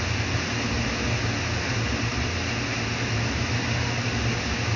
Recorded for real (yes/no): yes